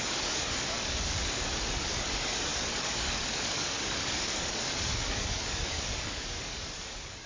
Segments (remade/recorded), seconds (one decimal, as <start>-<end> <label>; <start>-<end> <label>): 0.0-7.3 remade